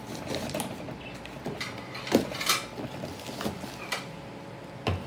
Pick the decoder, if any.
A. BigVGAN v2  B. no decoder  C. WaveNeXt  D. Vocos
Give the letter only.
B